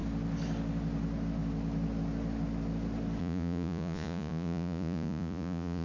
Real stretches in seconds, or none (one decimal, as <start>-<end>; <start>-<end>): 0.0-3.2